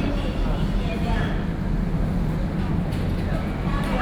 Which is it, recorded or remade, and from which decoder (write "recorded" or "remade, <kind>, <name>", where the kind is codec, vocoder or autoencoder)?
recorded